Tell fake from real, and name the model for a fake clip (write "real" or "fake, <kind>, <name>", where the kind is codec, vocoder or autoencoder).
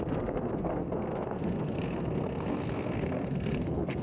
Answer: fake, codec, SNAC